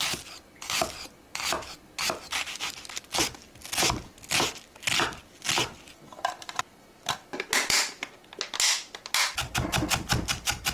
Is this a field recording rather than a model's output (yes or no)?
yes